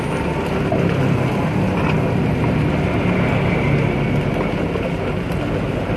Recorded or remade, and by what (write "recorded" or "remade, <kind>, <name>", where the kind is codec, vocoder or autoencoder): recorded